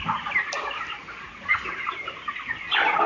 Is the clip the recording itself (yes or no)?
yes